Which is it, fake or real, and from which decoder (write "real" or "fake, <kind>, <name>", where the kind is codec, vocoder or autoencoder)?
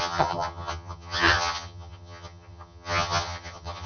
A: fake, vocoder, HiFi-GAN